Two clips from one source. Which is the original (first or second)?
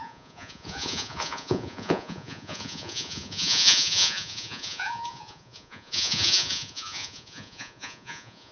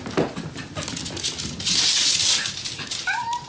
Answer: second